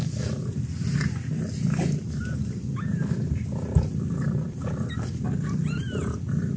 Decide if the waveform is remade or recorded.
recorded